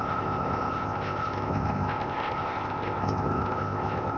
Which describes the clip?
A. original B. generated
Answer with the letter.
B